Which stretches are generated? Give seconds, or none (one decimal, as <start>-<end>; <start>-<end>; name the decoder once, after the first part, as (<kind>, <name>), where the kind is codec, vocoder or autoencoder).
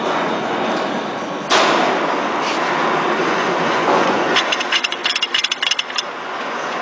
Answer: 0.0-0.7 (vocoder, Vocos); 3.2-5.0; 6.2-6.8